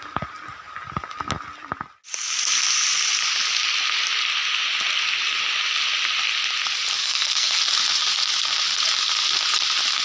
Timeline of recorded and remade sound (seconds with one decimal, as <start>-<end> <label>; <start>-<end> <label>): 0.0-7.0 recorded; 7.0-7.6 remade; 7.6-10.0 recorded